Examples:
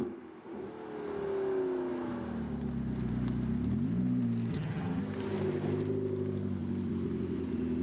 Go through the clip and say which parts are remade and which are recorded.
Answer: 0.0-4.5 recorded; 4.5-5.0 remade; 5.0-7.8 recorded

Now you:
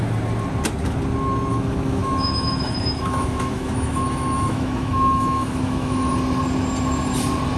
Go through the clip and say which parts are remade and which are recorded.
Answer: 0.0-1.5 recorded; 1.5-6.1 remade; 6.1-7.6 recorded

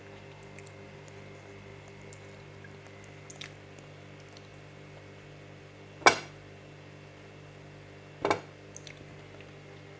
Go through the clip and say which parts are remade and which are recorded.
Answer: 0.0-10.0 recorded

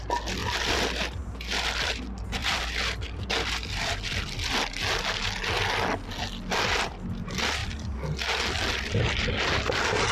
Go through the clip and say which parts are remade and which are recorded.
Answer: 0.0-0.4 recorded; 0.4-2.0 remade; 2.0-2.4 recorded; 2.4-5.2 remade; 5.2-7.6 recorded; 7.6-9.7 remade; 9.7-10.1 recorded